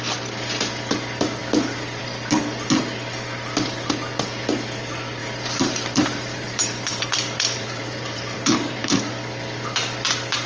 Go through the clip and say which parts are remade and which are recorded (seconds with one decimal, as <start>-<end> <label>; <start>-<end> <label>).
0.0-5.2 recorded; 5.2-9.1 remade; 9.1-10.5 recorded